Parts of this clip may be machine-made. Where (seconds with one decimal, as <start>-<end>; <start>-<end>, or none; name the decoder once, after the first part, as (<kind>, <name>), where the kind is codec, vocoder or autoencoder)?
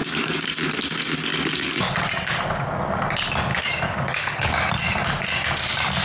0.0-0.5 (codec, DAC); 1.3-2.4; 3.5-4.7